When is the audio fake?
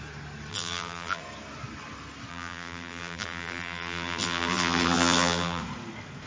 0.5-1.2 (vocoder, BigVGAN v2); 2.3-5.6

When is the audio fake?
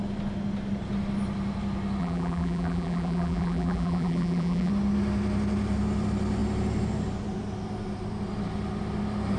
2.0-4.7 (vocoder, BigVGAN v2)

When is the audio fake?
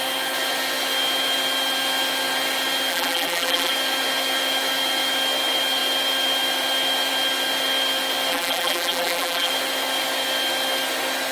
2.9-3.7 (vocoder, BigVGAN v2); 8.3-9.5